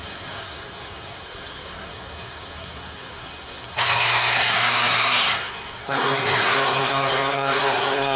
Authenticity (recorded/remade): remade